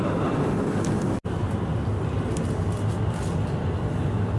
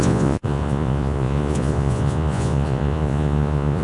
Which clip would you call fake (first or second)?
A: second